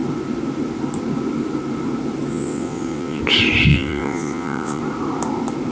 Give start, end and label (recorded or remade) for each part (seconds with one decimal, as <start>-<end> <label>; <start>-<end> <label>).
0.0-2.3 recorded; 2.3-3.2 remade; 3.2-3.7 recorded; 3.7-4.8 remade; 4.8-5.7 recorded